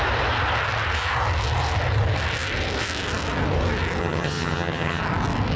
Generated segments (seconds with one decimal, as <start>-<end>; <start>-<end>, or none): 4.0-5.0